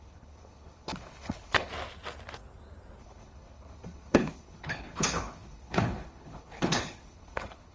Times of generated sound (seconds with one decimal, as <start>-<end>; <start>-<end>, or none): 0.0-1.7; 3.0-7.7